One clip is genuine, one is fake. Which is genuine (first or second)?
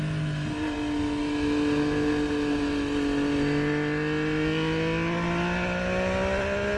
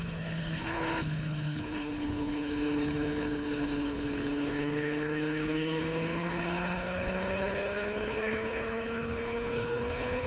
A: first